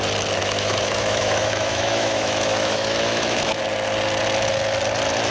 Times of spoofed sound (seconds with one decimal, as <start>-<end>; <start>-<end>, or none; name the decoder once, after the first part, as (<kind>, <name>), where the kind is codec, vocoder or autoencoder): 0.4-3.6 (autoencoder, DAC-VAE)